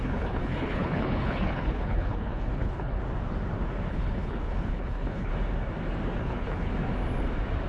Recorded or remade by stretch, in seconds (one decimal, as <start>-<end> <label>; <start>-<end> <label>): 0.0-3.0 remade; 3.0-3.9 recorded; 3.9-5.3 remade; 5.3-6.2 recorded; 6.2-6.7 remade; 6.7-7.7 recorded